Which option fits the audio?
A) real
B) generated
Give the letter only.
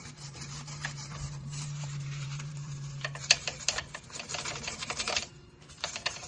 B